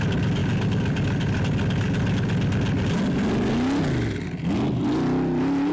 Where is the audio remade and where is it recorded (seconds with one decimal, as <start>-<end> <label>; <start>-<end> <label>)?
0.0-5.7 recorded